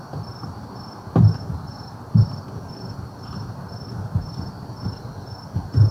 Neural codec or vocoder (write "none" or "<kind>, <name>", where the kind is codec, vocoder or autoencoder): none